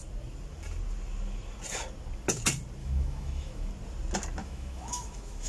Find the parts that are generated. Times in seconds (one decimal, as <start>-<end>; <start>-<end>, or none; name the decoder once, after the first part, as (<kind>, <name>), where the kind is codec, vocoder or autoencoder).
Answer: 2.8-3.7 (autoencoder, DAC-VAE); 4.4-5.5